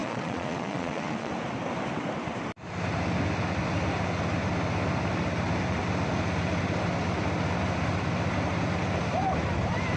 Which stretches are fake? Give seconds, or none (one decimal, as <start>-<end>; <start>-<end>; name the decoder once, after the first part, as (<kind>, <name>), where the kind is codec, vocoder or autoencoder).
0.0-1.3 (vocoder, Vocos)

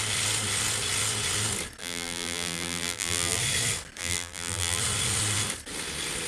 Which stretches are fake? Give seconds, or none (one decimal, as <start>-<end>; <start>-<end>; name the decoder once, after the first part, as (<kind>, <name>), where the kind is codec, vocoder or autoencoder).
1.8-3.4 (vocoder, BigVGAN v2); 4.0-4.8